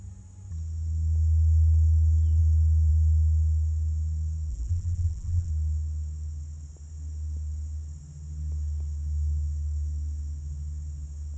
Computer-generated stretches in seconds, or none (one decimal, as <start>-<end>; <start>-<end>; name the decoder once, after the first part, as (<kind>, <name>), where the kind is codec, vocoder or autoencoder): 4.5-5.5 (vocoder, BigVGAN v2)